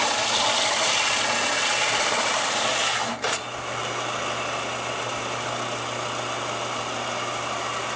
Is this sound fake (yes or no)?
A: no